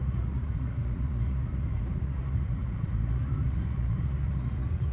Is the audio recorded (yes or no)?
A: no